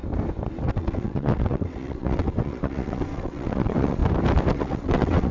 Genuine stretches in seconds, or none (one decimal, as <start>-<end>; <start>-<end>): 0.0-0.6; 4.0-4.5